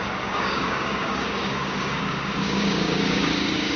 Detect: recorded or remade remade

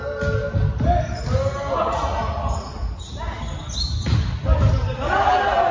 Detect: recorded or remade recorded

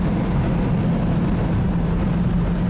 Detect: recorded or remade recorded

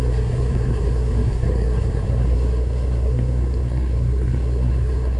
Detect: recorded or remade remade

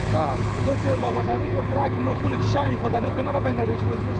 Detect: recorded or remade remade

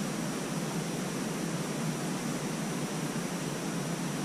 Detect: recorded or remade recorded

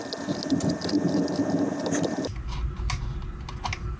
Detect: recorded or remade recorded